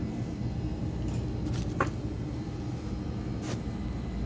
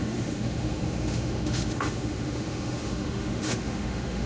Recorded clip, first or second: first